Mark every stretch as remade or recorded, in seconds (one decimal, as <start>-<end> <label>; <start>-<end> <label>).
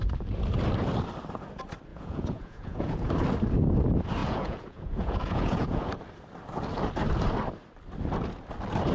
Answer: 0.0-1.9 recorded; 1.9-3.1 remade; 3.1-4.2 recorded; 4.2-5.9 remade; 5.9-8.9 recorded